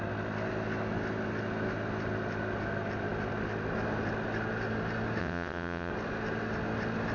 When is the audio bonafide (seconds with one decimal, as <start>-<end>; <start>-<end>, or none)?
0.0-5.2; 5.9-7.1

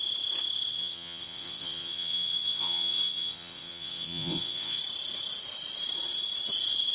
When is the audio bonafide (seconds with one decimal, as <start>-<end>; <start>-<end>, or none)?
0.0-0.7; 4.8-6.9

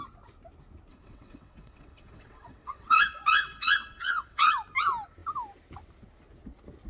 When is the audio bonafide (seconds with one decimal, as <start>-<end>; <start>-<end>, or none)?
0.0-0.9; 4.5-6.9

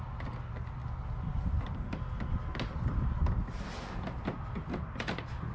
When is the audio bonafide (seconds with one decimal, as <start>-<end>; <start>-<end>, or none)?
0.0-5.5

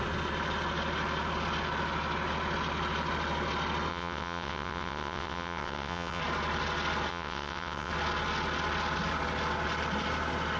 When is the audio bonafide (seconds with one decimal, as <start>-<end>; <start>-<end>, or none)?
0.0-3.9; 6.2-7.1; 7.9-10.6